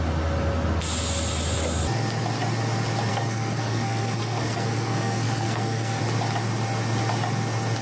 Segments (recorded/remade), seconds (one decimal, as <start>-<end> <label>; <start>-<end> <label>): 0.0-3.1 recorded; 3.1-6.0 remade; 6.0-7.8 recorded